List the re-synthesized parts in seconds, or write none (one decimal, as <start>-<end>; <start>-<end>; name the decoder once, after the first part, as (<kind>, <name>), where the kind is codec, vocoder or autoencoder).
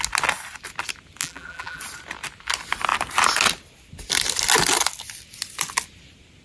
1.2-1.8 (vocoder, BigVGAN v2)